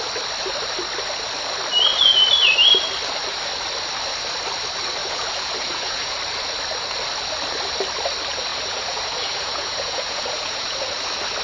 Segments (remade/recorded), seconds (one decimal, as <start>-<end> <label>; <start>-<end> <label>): 0.0-5.0 recorded; 5.0-6.2 remade; 6.2-8.5 recorded; 8.5-10.9 remade; 10.9-11.4 recorded